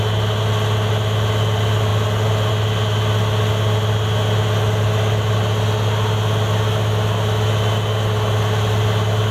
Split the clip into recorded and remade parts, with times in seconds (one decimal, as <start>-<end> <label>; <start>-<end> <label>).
0.0-9.3 recorded